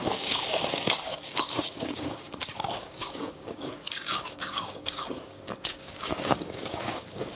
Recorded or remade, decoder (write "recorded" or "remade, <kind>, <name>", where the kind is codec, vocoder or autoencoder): remade, codec, DAC